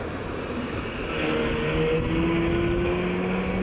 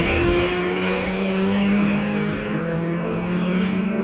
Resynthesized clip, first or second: second